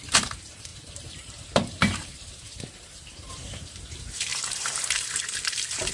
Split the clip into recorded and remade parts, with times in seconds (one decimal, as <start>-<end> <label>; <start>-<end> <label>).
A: 0.0-5.9 remade